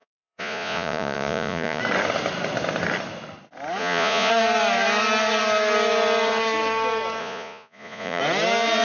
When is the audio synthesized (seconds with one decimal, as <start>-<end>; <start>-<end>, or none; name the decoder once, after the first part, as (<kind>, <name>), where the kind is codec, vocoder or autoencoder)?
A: 0.0-1.8 (vocoder, Vocos); 3.8-4.3; 7.2-8.2